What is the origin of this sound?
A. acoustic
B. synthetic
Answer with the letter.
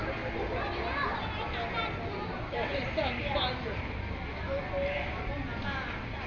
A